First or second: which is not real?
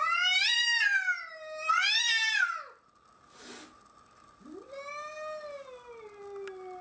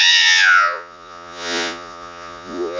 second